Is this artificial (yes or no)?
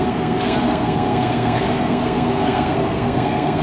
yes